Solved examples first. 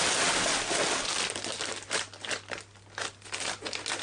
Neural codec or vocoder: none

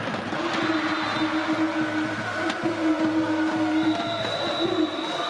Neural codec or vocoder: none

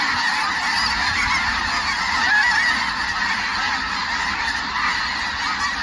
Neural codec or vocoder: none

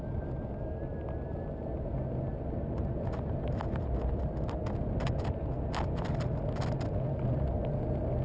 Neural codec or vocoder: none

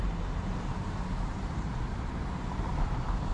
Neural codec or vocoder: vocoder, BigVGAN v2